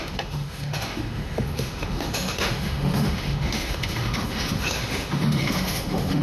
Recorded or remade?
remade